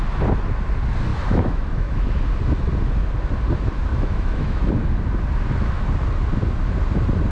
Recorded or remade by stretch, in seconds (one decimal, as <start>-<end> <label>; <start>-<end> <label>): 0.0-1.1 recorded; 1.1-2.2 remade; 2.2-3.9 recorded; 3.9-4.7 remade; 4.7-7.3 recorded